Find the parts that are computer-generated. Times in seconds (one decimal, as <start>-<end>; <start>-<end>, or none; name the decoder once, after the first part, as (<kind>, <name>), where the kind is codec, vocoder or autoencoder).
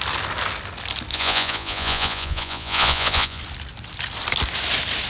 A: 1.1-3.4 (vocoder, Vocos)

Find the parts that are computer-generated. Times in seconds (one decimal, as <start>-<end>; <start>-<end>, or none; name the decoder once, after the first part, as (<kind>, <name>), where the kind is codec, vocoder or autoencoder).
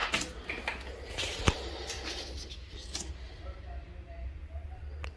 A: 4.4-5.2 (vocoder, WaveNeXt)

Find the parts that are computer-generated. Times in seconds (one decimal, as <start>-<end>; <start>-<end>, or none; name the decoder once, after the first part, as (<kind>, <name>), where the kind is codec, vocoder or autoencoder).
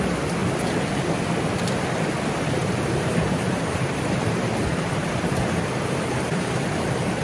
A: 2.6-7.2 (vocoder, BigVGAN v2)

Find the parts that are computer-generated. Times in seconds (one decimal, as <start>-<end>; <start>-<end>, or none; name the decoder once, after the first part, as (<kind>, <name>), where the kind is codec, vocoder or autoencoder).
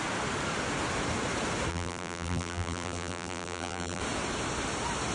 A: 1.7-4.0 (vocoder, BigVGAN v2)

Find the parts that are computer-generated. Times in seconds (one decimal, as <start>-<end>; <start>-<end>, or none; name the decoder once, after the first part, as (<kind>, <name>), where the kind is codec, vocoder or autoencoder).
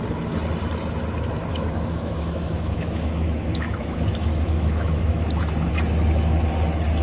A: 1.5-5.7 (autoencoder, DAC-VAE)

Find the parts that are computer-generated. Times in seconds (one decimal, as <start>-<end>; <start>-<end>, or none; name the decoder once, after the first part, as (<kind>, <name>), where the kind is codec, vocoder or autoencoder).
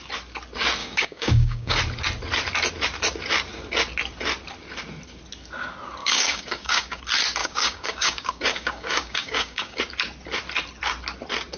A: 0.8-1.8 (codec, DAC); 6.0-7.0; 7.4-9.8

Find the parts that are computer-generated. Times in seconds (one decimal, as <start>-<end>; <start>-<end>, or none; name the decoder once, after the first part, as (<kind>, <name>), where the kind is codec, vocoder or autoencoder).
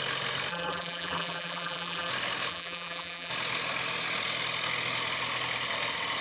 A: 0.5-2.1 (vocoder, BigVGAN v2); 2.5-3.3